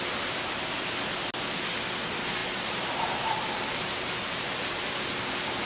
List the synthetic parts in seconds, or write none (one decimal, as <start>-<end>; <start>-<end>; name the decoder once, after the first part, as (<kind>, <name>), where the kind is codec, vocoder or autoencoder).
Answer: 2.4-5.3 (vocoder, BigVGAN v2)